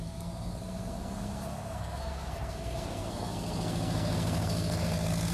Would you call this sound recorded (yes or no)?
no